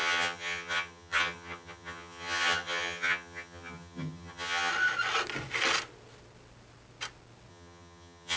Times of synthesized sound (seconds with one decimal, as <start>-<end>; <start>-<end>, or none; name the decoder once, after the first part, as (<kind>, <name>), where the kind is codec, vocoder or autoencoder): 0.0-4.7 (vocoder, HiFi-GAN); 7.5-8.4